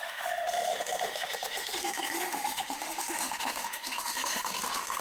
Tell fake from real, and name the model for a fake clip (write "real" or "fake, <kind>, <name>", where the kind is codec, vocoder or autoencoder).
fake, autoencoder, DAC-VAE